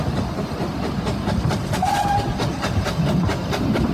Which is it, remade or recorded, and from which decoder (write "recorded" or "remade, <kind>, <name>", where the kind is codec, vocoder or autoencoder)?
remade, vocoder, BigVGAN v2